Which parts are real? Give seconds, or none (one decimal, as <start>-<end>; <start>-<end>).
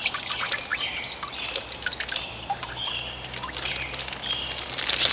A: 0.0-5.1